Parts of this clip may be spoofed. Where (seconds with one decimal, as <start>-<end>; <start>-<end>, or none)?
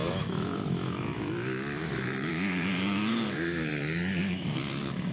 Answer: 0.0-3.7; 4.2-5.1